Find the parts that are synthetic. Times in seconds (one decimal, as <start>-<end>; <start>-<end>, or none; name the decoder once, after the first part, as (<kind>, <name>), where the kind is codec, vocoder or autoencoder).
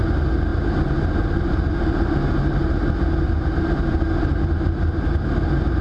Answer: none